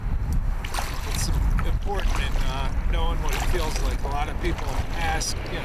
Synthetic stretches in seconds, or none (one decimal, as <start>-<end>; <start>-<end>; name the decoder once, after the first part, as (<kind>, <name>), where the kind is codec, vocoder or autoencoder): none